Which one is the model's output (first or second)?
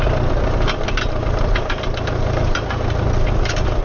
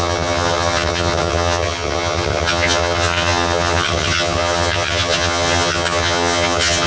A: second